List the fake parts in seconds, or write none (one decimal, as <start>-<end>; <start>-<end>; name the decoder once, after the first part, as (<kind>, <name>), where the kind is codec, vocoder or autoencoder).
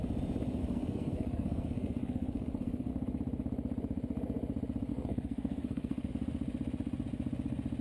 0.6-2.9 (codec, SNAC); 4.9-6.1